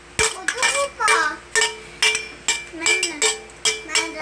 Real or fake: real